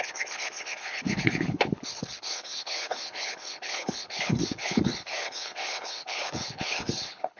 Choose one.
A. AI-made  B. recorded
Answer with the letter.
A